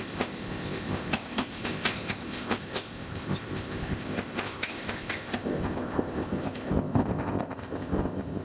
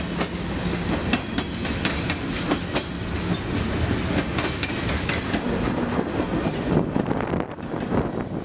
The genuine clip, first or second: second